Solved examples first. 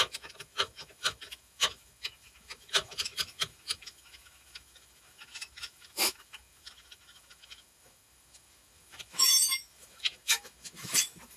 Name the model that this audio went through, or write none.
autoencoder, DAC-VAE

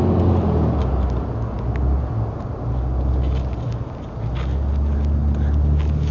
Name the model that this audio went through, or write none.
none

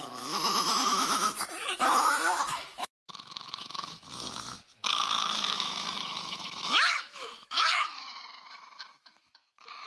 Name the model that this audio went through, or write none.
autoencoder, DAC-VAE